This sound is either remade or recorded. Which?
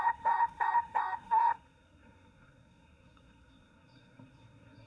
remade